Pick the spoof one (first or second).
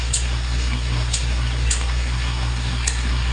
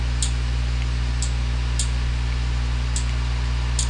first